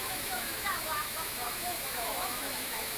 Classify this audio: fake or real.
fake